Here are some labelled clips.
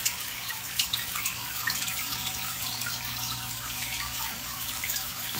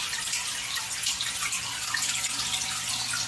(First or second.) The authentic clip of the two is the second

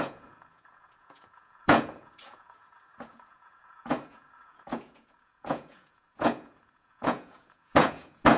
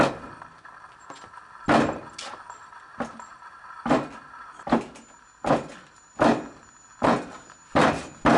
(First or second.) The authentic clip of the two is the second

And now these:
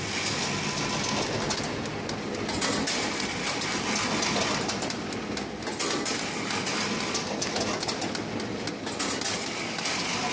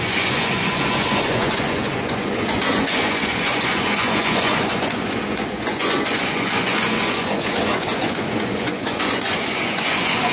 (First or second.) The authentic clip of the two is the first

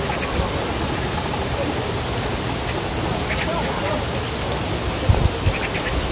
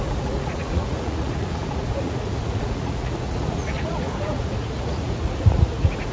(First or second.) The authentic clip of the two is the first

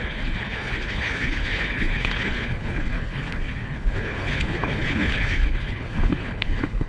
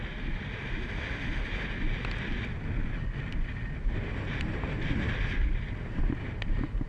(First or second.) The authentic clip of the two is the second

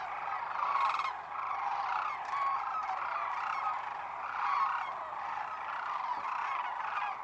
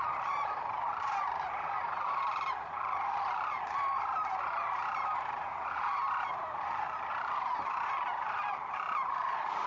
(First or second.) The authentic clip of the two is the first